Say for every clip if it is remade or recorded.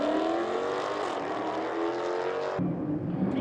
recorded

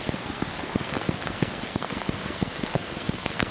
remade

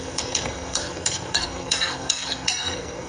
remade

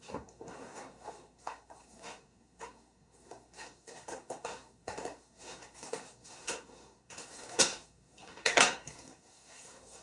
remade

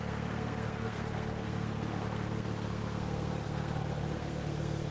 remade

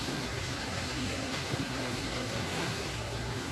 remade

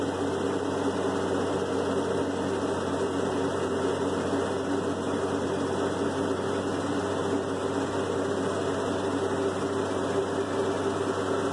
recorded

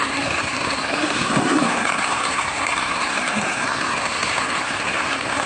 remade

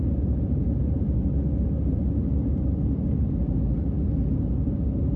recorded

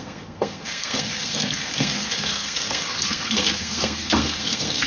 remade